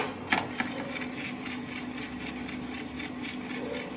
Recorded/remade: recorded